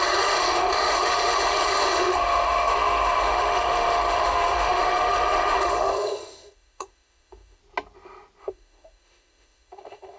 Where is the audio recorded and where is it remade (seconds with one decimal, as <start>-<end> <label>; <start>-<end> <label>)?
0.0-7.6 remade; 7.6-8.4 recorded; 8.4-10.2 remade